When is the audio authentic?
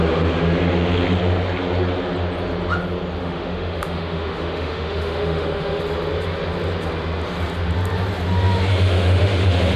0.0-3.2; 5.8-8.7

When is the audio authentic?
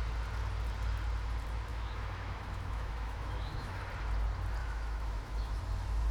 0.0-1.7; 3.8-4.6; 5.6-6.1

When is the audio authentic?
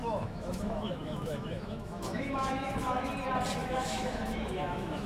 3.1-3.6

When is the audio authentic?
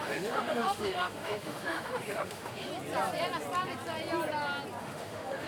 2.7-4.8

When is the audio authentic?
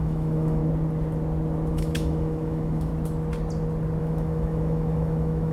0.6-1.7; 2.9-4.0